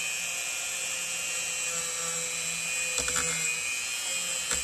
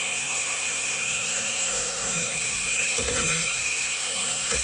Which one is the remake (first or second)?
second